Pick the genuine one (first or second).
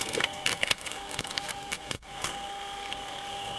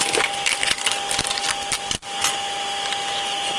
second